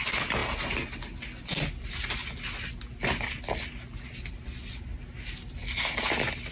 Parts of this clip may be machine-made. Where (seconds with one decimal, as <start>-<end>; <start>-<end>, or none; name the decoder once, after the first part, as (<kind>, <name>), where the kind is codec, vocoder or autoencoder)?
none